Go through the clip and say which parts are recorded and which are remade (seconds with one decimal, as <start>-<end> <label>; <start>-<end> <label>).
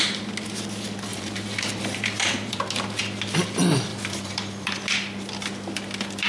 0.0-1.1 recorded; 1.1-2.6 remade; 2.6-3.9 recorded; 3.9-4.7 remade; 4.7-6.3 recorded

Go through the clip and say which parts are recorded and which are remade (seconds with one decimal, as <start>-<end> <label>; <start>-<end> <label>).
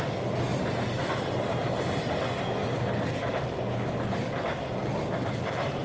0.0-5.8 recorded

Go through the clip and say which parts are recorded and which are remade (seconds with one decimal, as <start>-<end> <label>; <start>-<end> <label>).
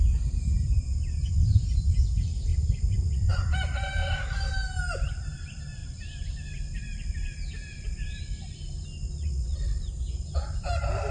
0.0-2.5 remade; 2.5-3.3 recorded; 3.3-5.8 remade; 5.8-10.1 recorded; 10.1-11.1 remade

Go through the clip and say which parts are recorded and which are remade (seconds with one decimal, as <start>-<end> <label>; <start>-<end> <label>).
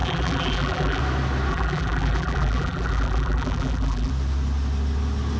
0.0-1.0 remade; 1.0-1.5 recorded; 1.5-4.1 remade; 4.1-5.4 recorded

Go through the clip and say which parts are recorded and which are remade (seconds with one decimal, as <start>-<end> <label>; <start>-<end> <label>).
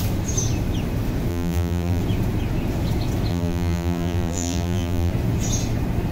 0.0-1.3 recorded; 1.3-2.0 remade; 2.0-3.3 recorded; 3.3-5.1 remade; 5.1-6.1 recorded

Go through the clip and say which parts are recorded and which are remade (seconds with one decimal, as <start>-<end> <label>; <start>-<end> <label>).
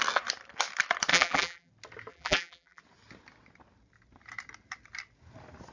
0.0-1.1 recorded; 1.1-1.7 remade; 1.7-2.1 recorded; 2.1-2.8 remade; 2.8-5.7 recorded